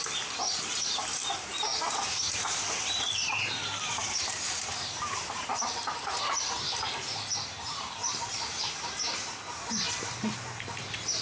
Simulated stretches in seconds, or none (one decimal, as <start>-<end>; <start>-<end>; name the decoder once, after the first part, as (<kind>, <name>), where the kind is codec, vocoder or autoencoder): 0.0-11.2 (vocoder, BigVGAN v2)